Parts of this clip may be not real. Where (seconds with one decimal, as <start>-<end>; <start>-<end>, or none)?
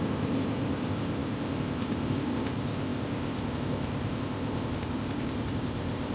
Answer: 0.0-6.1